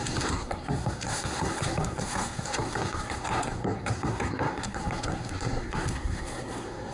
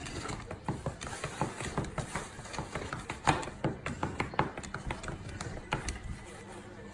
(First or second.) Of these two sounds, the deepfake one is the first